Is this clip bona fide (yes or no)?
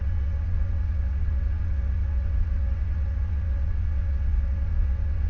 no